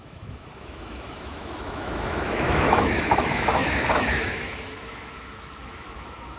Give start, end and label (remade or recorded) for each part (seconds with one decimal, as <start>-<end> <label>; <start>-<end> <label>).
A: 0.0-6.4 remade